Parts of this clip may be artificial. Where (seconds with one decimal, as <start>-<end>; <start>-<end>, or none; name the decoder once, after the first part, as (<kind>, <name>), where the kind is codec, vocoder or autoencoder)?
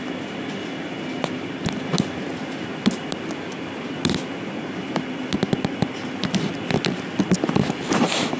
none